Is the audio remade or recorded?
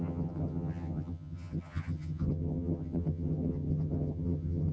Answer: remade